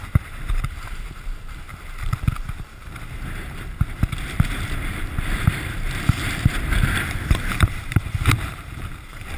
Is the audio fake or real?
fake